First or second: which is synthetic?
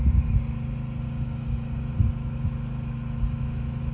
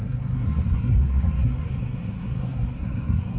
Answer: second